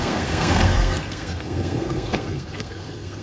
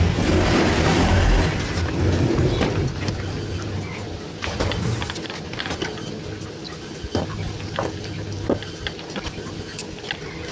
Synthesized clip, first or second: first